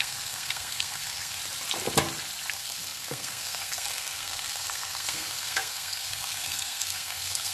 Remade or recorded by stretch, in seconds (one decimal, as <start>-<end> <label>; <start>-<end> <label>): 0.0-1.4 remade; 1.4-2.5 recorded; 2.5-7.5 remade

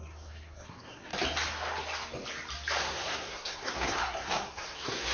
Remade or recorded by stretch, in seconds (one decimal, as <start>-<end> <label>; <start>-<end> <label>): 0.0-1.1 remade; 1.1-2.8 recorded; 2.8-5.1 remade